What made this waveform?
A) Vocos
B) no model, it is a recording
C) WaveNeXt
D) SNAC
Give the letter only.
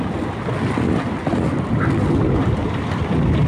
B